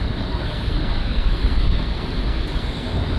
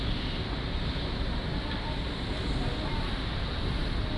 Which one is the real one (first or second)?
second